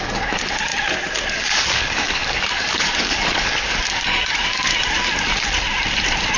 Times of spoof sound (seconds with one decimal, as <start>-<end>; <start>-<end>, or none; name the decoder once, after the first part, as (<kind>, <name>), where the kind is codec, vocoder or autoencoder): 0.0-0.7 (codec, DAC); 1.3-4.7